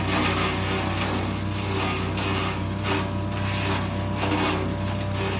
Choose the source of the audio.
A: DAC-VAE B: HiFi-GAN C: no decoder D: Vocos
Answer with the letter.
C